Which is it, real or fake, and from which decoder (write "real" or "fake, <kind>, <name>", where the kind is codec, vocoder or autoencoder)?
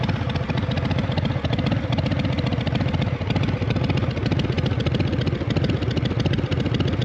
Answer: real